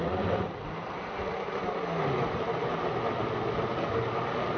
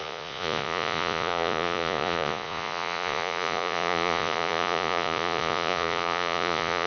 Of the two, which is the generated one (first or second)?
second